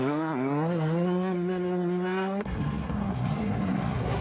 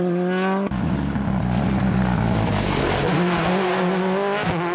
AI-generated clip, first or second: first